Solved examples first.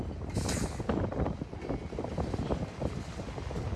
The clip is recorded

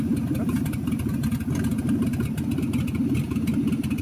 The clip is recorded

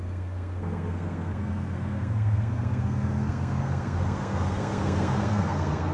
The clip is remade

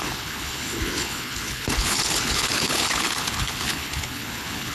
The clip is remade